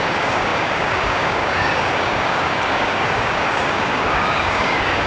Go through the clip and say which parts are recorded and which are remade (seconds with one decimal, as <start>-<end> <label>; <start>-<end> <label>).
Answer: 0.0-5.1 remade